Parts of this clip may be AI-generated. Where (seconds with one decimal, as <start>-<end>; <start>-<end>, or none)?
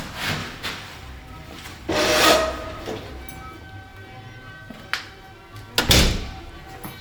0.4-3.1